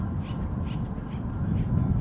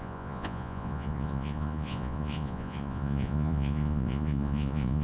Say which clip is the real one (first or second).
first